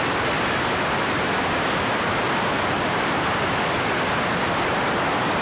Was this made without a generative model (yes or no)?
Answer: yes